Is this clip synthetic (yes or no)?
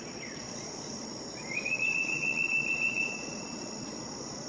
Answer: yes